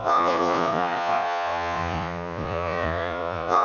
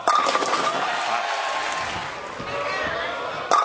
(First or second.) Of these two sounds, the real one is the second